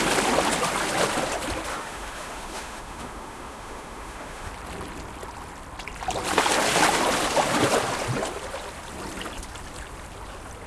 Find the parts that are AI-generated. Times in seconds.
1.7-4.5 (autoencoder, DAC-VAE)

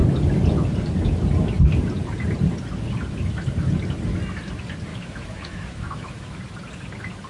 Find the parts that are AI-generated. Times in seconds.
4.9-6.4 (autoencoder, DAC-VAE)

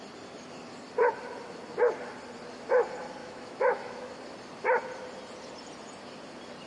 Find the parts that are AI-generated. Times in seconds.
3.2-4.2 (autoencoder, DAC-VAE)

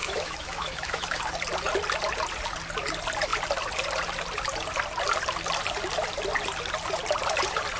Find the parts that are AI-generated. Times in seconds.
0.0-1.2 (autoencoder, DAC-VAE)

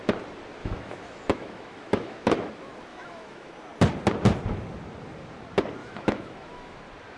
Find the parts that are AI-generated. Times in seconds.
0.6-2.5 (autoencoder, DAC-VAE); 2.9-3.5; 5.8-6.8

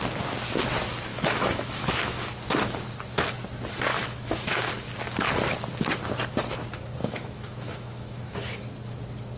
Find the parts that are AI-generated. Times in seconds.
1.1-2.3 (autoencoder, DAC-VAE); 3.9-4.7; 7.0-8.6

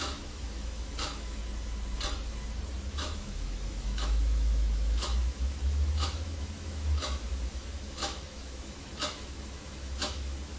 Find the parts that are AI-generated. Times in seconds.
0.0-1.4 (autoencoder, DAC-VAE); 2.9-10.6

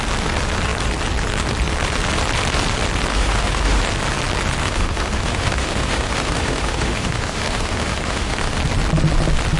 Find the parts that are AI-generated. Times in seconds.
3.1-3.8 (autoencoder, DAC-VAE); 4.6-8.6